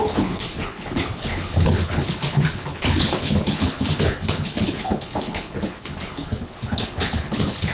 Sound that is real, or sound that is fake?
fake